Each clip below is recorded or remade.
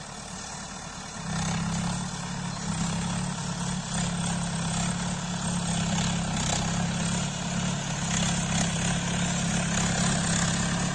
recorded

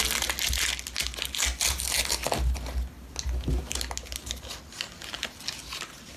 recorded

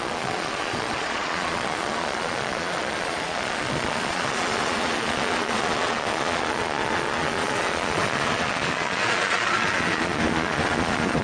remade